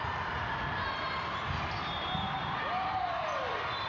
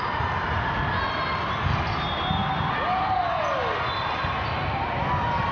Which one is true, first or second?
second